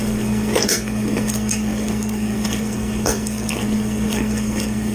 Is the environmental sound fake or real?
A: fake